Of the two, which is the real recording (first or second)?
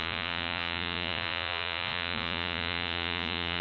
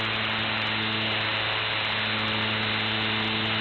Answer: second